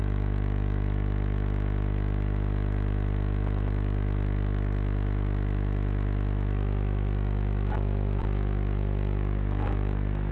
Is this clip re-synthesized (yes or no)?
yes